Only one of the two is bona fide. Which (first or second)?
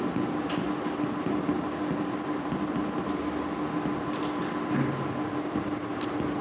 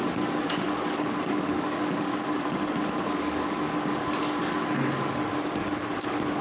first